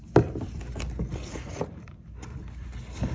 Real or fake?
fake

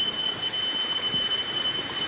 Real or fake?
real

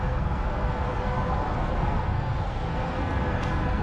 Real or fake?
fake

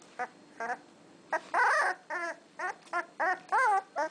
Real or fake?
real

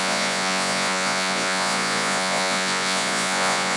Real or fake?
fake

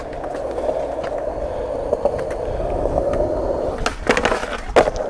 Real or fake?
real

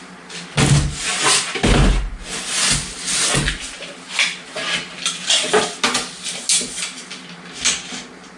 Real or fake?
real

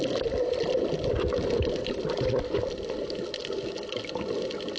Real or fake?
real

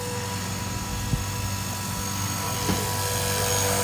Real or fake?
real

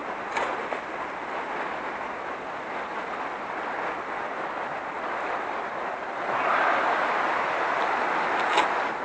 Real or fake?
real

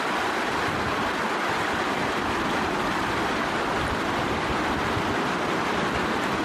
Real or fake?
real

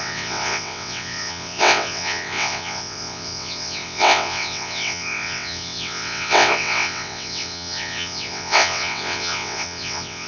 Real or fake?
fake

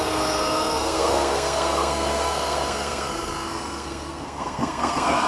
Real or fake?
fake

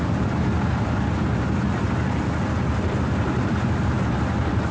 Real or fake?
real